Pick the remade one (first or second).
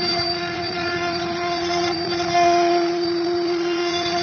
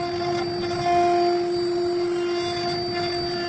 first